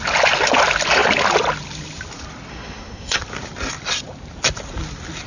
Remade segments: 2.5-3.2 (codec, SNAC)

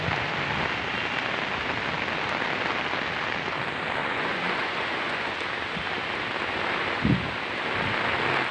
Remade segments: 4.0-5.4 (vocoder, Vocos)